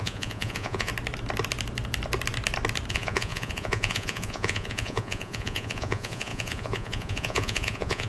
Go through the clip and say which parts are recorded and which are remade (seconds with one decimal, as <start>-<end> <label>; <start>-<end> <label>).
0.0-0.9 remade; 0.9-2.9 recorded; 2.9-8.1 remade